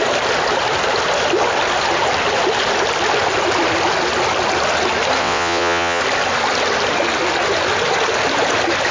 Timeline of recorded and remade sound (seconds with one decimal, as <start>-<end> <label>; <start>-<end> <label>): 0.0-5.2 recorded; 5.2-6.0 remade; 6.0-8.9 recorded